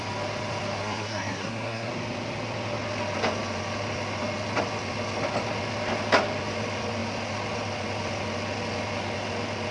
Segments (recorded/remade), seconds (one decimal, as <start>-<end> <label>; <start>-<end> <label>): 0.0-0.8 recorded; 0.8-1.9 remade; 1.9-9.7 recorded